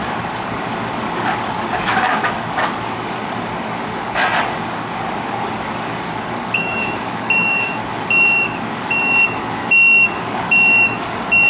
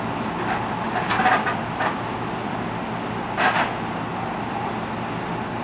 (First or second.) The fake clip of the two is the first